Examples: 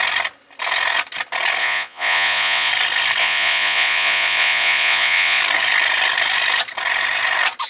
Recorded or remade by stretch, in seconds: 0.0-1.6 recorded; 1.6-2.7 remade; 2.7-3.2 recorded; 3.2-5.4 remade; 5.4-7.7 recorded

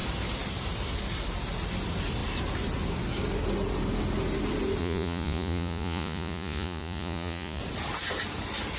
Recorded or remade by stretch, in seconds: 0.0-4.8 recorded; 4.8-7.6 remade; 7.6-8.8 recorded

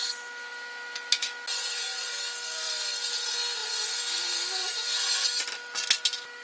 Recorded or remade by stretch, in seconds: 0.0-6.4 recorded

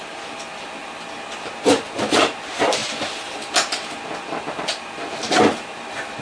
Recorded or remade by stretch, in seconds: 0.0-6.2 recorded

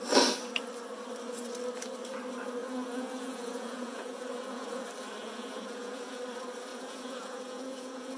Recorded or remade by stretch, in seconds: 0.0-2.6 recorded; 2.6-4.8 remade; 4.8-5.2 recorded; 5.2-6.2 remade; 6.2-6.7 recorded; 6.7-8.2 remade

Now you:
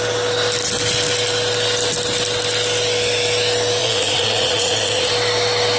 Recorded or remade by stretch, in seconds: 0.0-3.8 recorded; 3.8-5.1 remade; 5.1-5.8 recorded